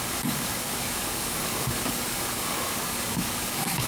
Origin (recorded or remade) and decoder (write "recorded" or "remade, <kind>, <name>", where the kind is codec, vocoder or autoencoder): remade, codec, DAC